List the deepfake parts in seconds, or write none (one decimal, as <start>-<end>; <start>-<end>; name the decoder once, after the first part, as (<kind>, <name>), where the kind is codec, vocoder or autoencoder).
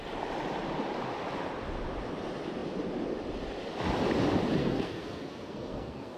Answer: 4.6-6.2 (codec, SNAC)